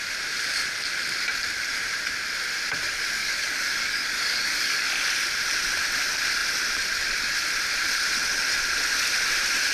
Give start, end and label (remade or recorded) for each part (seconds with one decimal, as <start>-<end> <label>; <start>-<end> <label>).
0.0-3.2 recorded; 3.2-4.9 remade; 4.9-9.7 recorded